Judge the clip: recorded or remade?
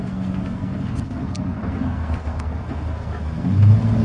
remade